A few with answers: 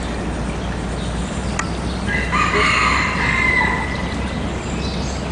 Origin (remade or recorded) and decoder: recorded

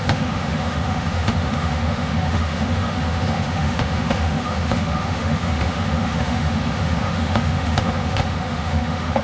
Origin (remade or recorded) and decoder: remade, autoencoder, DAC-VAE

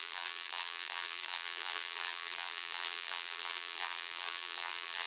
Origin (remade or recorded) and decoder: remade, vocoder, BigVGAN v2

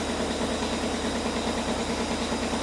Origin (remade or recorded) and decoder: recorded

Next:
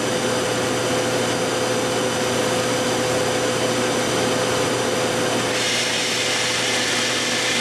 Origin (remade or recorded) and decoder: recorded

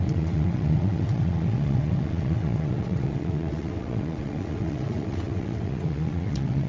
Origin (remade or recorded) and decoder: remade, vocoder, WaveNeXt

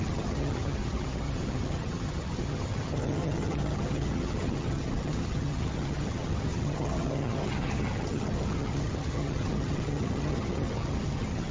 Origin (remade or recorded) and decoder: remade, vocoder, HiFi-GAN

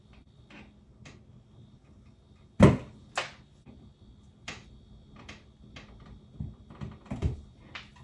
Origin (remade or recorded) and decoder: recorded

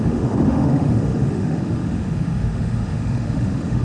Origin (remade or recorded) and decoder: remade, autoencoder, DAC-VAE